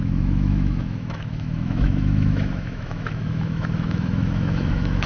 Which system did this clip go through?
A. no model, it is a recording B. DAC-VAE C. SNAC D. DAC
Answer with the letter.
B